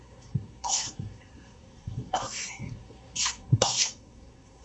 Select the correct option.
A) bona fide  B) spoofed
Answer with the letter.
B